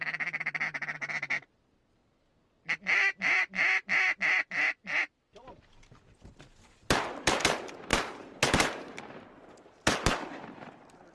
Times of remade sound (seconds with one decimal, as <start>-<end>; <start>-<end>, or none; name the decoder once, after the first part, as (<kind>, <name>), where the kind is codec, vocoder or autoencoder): 7.9-9.6 (vocoder, BigVGAN v2)